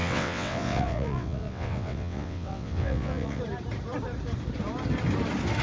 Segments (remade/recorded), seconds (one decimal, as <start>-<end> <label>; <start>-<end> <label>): 0.0-3.4 remade; 3.4-5.6 recorded